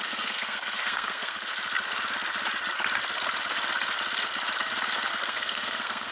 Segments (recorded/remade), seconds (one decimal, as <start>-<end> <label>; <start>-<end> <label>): 0.0-1.5 remade; 1.5-5.2 recorded; 5.2-6.1 remade